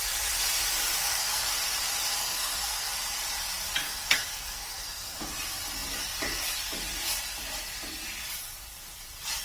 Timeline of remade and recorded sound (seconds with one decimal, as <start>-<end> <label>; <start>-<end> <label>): 0.0-1.0 recorded; 1.0-1.5 remade; 1.5-2.2 recorded; 2.2-2.9 remade; 2.9-3.8 recorded; 3.8-5.3 remade; 5.3-9.4 recorded